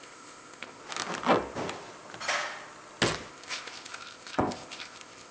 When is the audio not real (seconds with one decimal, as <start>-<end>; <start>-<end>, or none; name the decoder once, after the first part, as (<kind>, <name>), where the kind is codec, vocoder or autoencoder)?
0.0-0.8 (codec, ZipCodec); 3.3-5.3